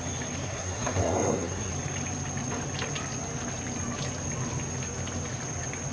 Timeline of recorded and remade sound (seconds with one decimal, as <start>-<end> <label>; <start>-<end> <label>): 0.0-0.4 recorded; 0.4-1.7 remade; 1.7-5.9 recorded